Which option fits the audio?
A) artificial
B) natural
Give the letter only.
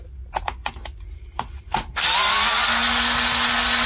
B